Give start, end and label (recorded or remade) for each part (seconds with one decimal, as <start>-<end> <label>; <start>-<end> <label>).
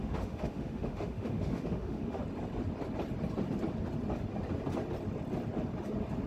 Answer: 0.0-2.2 remade; 2.2-6.3 recorded